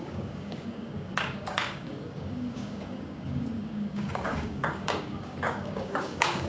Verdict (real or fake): fake